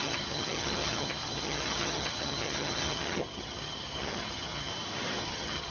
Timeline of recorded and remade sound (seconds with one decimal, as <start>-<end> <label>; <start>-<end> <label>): 0.0-4.7 remade; 4.7-5.2 recorded; 5.2-5.7 remade